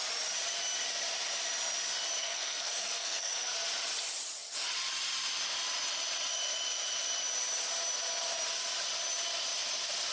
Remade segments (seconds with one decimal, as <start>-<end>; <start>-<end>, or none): 2.2-3.5